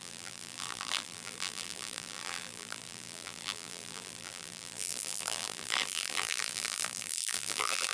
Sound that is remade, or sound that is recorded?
remade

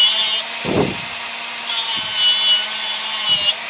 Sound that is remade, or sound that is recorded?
recorded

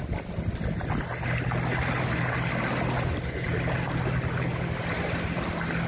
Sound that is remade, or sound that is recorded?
recorded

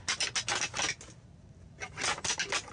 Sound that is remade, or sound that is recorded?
recorded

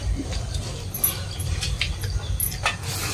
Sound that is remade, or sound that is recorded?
recorded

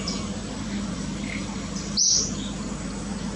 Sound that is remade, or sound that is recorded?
recorded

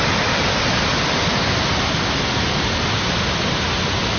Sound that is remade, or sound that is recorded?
recorded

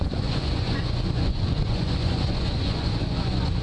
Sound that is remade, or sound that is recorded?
remade